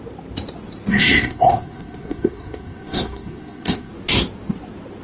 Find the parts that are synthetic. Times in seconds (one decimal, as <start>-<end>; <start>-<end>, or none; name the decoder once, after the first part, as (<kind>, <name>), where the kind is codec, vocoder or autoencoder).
0.9-3.9 (codec, SNAC)